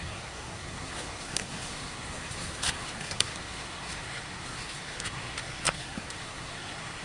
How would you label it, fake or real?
fake